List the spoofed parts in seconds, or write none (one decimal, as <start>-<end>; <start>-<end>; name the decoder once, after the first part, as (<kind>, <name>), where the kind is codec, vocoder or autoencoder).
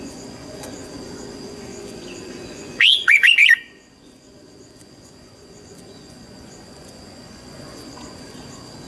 0.0-8.9 (vocoder, Vocos)